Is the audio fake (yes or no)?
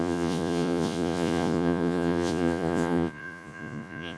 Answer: yes